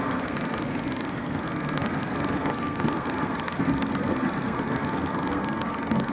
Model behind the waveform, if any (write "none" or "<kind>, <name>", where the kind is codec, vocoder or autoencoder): codec, SNAC